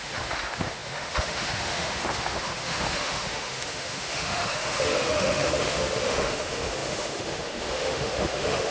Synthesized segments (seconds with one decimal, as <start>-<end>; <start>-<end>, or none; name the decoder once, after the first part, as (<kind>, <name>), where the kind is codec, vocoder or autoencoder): 0.0-8.7 (autoencoder, DAC-VAE)